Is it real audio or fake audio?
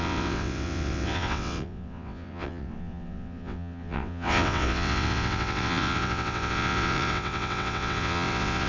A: fake